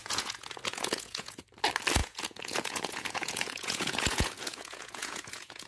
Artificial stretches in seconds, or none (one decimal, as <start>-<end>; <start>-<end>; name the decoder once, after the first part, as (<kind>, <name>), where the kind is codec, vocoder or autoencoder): 0.0-1.4 (vocoder, Vocos); 2.0-5.7